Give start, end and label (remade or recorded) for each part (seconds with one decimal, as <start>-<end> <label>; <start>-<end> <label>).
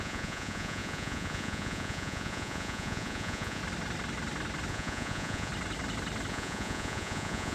0.0-3.6 remade; 3.6-4.7 recorded; 4.7-5.5 remade; 5.5-6.3 recorded; 6.3-7.5 remade